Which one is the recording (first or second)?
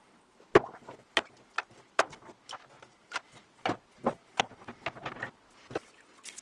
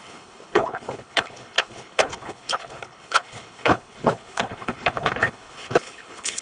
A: first